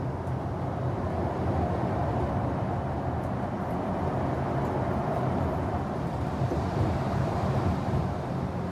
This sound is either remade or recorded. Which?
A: remade